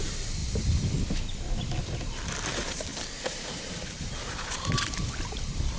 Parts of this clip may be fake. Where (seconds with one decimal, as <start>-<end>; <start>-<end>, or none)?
none